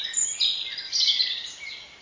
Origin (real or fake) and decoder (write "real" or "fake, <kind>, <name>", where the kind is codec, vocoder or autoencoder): real